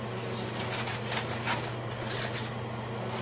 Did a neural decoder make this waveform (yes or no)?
no